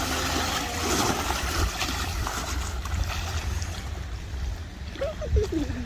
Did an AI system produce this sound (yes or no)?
no